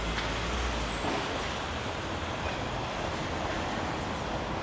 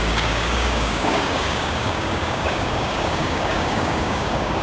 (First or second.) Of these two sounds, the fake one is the second